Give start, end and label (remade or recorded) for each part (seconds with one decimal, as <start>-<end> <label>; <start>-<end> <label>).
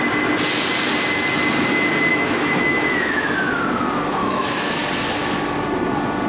0.0-2.1 recorded; 2.1-3.5 remade; 3.5-4.2 recorded; 4.2-4.8 remade; 4.8-6.3 recorded